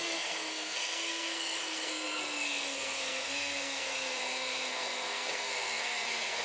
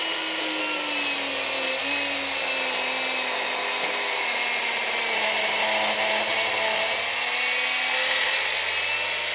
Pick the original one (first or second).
second